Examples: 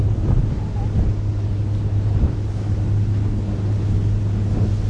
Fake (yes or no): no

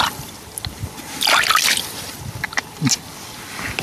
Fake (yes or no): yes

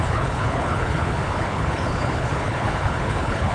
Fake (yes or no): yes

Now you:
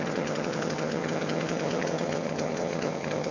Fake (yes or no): yes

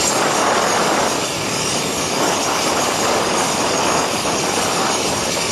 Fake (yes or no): yes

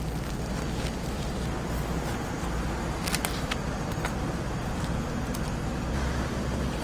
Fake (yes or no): no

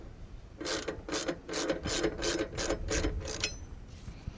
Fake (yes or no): no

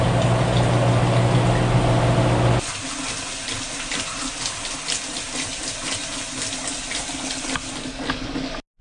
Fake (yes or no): no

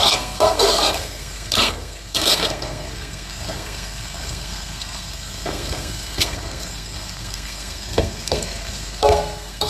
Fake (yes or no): yes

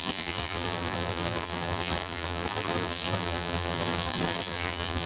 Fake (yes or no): yes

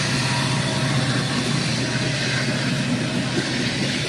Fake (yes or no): no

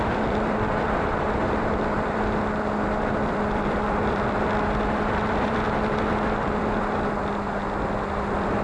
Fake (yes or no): yes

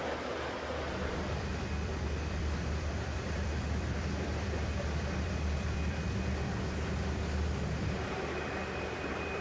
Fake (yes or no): yes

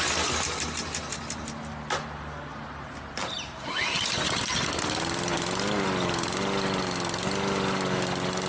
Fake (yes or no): no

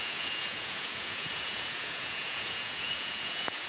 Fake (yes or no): yes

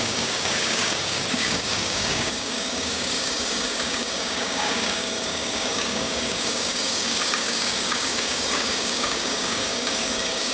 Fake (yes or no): yes